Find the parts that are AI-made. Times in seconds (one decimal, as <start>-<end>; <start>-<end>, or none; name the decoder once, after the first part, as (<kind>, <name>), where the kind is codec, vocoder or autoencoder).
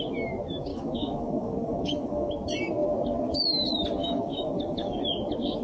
0.7-2.3 (codec, DAC); 4.0-5.0